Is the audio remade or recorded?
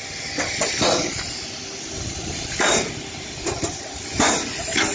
recorded